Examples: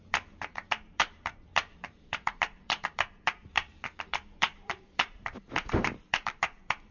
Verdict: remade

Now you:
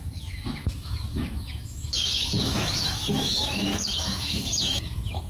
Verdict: remade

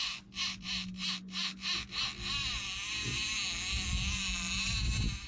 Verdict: recorded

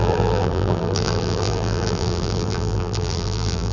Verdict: remade